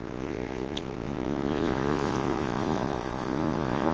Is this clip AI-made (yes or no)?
yes